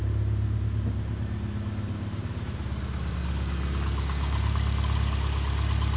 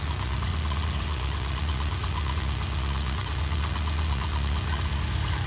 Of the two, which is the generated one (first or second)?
second